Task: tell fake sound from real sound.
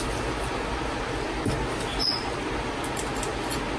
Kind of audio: real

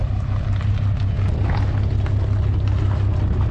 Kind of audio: real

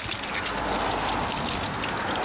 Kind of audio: real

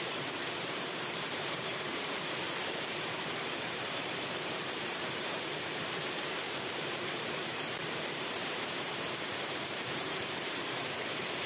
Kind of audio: fake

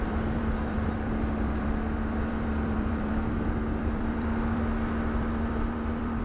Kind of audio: fake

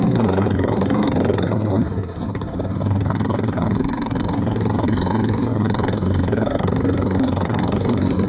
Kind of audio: fake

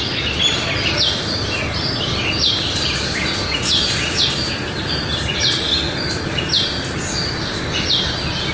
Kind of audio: real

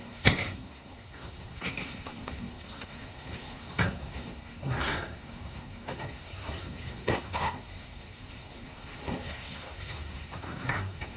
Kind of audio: fake